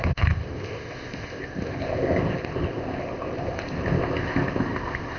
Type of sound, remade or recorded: remade